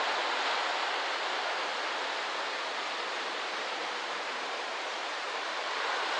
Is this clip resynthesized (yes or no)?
yes